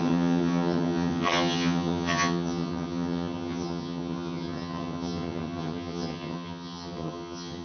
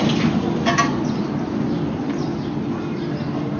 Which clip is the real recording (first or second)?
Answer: second